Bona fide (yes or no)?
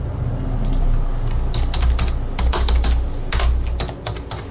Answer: yes